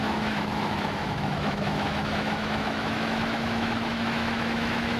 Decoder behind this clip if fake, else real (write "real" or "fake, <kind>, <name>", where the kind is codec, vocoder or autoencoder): fake, autoencoder, DAC-VAE